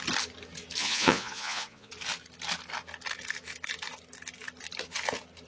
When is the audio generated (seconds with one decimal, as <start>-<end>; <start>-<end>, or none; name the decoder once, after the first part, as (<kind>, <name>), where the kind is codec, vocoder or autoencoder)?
0.8-1.9 (vocoder, Vocos)